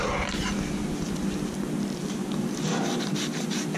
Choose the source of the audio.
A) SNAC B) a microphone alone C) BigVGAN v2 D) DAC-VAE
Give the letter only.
B